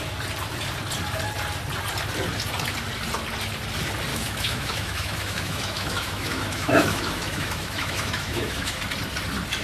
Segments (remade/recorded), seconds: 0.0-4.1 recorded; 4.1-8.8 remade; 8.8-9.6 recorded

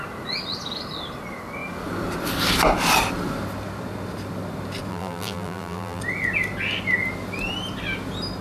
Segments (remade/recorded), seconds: 0.0-4.9 recorded; 4.9-6.0 remade; 6.0-8.4 recorded

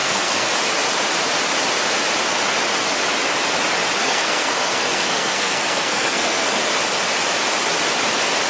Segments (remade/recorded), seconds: 0.0-0.5 remade; 0.5-4.0 recorded; 4.0-6.6 remade; 6.6-8.5 recorded

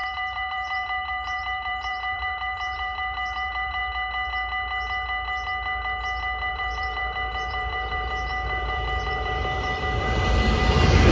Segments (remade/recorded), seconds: 0.0-3.8 remade; 3.8-6.5 recorded; 6.5-11.1 remade

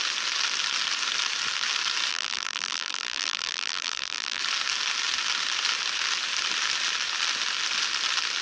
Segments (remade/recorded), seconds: 0.0-2.1 recorded; 2.1-4.4 remade; 4.4-8.4 recorded